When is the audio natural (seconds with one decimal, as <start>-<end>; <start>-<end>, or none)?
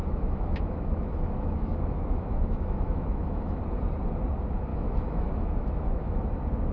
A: 3.6-4.7; 6.3-6.7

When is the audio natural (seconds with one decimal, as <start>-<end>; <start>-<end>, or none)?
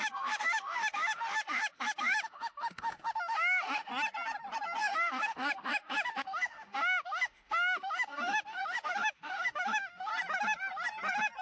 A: 3.9-4.8; 10.1-11.4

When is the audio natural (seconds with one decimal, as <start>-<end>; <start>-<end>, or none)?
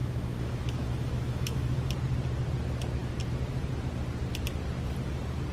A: 1.9-5.5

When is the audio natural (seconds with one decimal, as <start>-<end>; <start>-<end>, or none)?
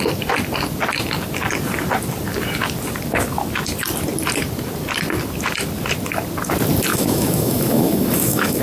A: 0.0-6.9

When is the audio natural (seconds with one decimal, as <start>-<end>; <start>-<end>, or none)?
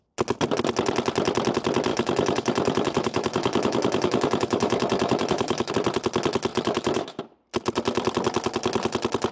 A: 0.0-1.9; 5.7-6.5; 7.2-9.3